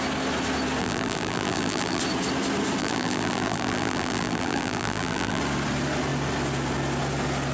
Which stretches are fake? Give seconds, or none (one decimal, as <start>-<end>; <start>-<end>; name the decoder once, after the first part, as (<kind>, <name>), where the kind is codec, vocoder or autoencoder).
0.8-2.0 (vocoder, BigVGAN v2); 2.8-5.4